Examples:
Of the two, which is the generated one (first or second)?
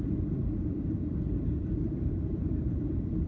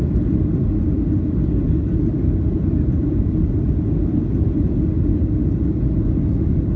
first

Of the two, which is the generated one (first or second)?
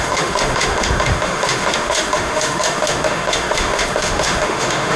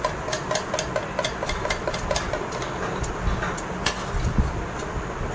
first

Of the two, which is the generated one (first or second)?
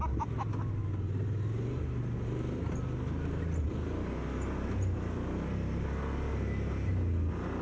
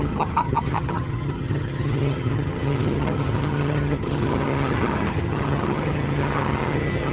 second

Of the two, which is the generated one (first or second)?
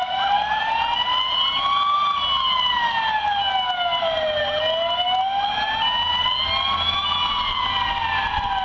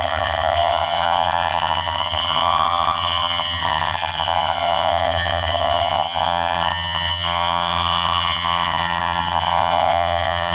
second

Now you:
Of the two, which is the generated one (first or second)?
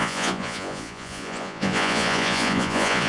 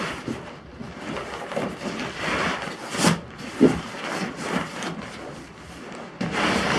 first